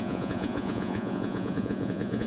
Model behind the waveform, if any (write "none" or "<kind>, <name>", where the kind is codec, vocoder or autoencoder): vocoder, Vocos